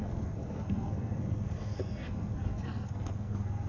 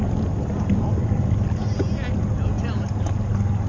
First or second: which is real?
second